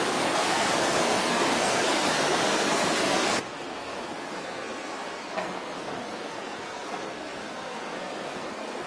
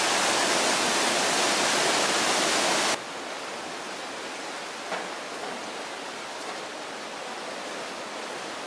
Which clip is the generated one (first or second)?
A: first